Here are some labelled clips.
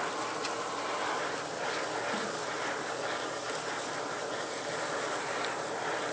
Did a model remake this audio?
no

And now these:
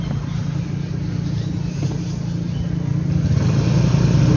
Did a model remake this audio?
no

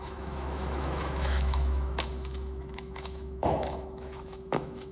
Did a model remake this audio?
yes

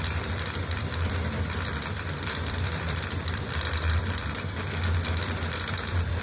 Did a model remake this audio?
yes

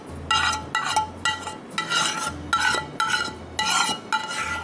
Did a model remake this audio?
no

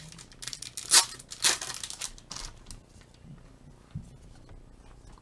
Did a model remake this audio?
no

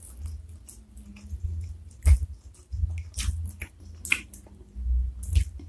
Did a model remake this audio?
no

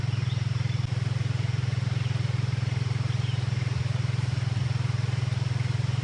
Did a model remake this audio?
no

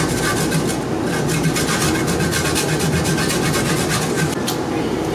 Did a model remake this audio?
no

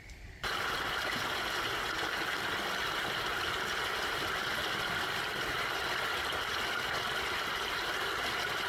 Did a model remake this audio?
no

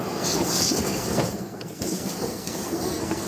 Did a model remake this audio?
yes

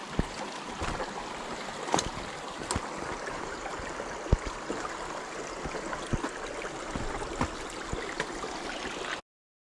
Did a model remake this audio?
no